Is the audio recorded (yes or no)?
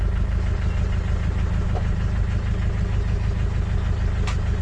yes